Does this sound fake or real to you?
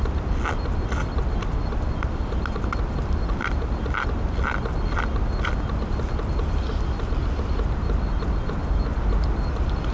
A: real